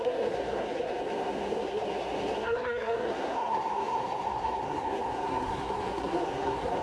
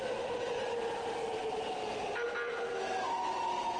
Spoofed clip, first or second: first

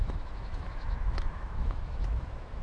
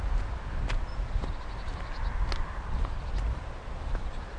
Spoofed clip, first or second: first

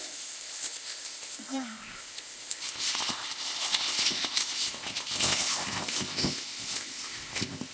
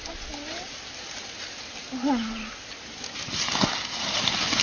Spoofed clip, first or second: first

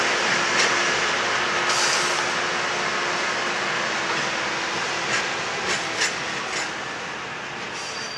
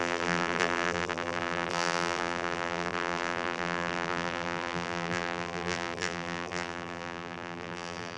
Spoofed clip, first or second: second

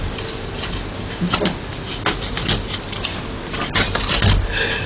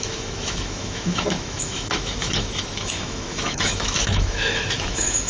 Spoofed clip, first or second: second